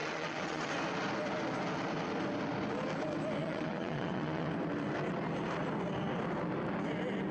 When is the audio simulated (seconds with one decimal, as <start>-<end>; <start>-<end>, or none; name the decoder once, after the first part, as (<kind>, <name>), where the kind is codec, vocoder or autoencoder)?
0.0-0.7 (vocoder, WaveNeXt); 3.4-4.5

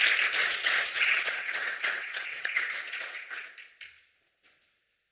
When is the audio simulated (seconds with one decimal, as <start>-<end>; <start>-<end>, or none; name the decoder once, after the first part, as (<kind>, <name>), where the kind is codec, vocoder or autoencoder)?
0.4-3.5 (vocoder, WaveNeXt)

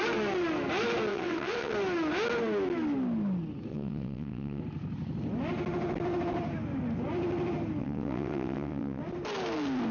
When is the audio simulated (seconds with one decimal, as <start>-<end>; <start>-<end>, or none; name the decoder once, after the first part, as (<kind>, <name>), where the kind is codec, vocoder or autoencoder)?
1.1-1.7 (vocoder, WaveNeXt); 3.7-4.6; 7.8-9.0